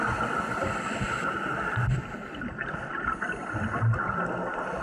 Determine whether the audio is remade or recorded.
recorded